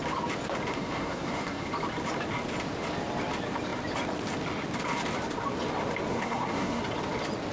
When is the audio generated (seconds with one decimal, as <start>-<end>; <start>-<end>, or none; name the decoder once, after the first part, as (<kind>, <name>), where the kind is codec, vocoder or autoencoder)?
0.7-1.7 (codec, SNAC); 6.1-6.8